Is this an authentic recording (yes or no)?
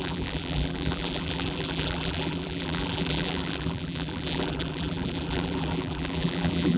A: no